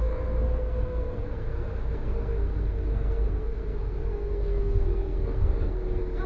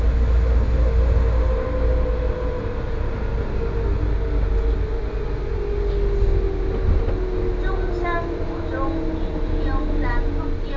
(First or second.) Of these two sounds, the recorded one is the second